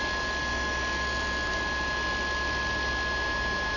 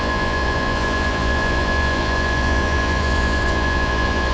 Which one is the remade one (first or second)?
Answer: second